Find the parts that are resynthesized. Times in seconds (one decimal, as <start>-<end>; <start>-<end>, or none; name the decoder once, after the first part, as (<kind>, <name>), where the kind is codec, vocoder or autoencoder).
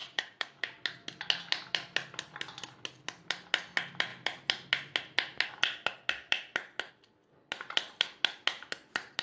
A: 0.0-0.6 (codec, DAC)